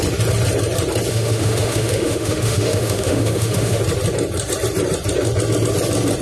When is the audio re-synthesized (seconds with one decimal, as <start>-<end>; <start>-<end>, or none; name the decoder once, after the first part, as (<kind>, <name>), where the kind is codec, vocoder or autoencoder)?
1.1-3.8 (autoencoder, DAC-VAE)